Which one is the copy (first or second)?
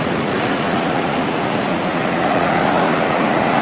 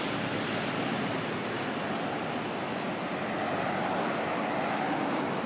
first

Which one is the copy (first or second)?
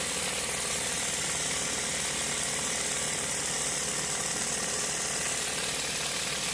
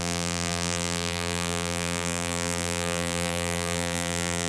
second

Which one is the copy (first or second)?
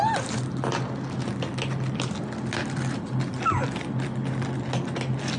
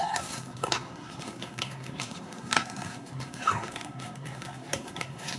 second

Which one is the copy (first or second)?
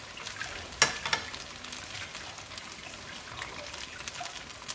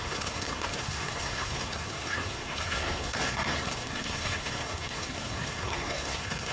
second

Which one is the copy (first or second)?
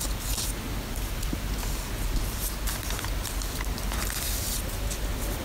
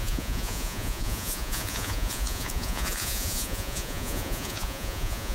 second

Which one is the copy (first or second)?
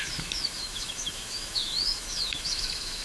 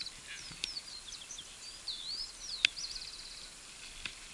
first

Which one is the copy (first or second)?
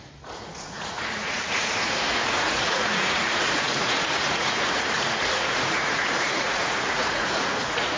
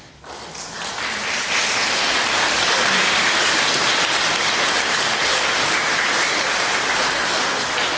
first